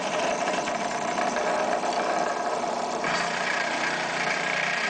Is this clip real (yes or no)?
no